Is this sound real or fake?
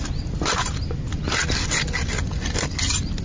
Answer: real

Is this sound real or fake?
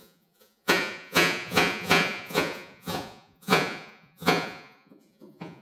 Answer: fake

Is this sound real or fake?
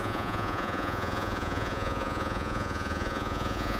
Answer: fake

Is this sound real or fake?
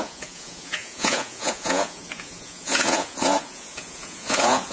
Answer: fake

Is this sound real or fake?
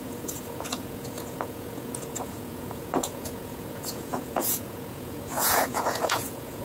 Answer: fake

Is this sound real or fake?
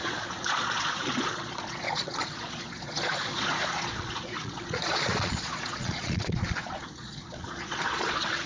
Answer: fake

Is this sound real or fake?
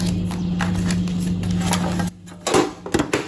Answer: real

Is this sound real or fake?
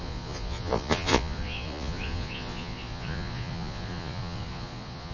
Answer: fake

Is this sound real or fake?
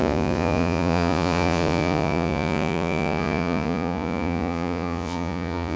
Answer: fake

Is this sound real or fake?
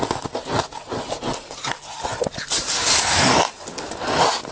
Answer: real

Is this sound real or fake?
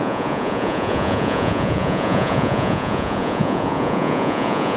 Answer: fake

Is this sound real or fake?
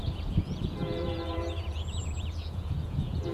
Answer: fake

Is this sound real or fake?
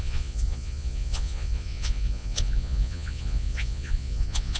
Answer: fake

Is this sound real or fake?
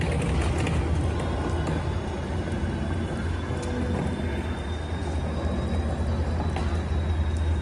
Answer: real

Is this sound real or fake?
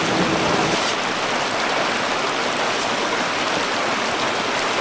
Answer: real